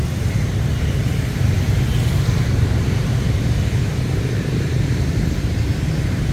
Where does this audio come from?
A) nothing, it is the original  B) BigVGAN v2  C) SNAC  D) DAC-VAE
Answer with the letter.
B